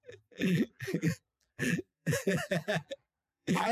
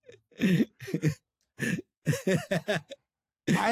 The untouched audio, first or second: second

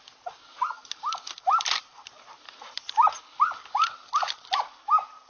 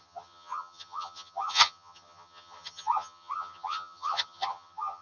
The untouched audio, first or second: first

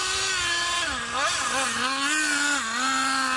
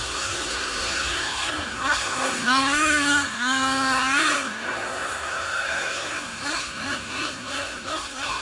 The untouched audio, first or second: first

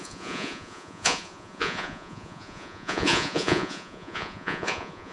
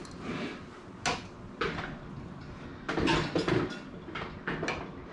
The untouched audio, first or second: second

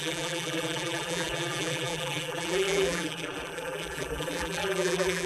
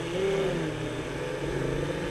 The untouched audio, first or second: second